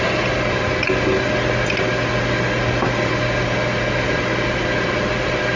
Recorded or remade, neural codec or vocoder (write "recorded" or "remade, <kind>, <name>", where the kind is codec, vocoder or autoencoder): recorded